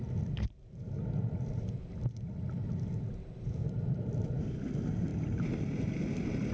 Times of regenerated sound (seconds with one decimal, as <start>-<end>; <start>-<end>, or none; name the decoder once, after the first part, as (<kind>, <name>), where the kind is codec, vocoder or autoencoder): 0.7-5.1 (vocoder, BigVGAN v2)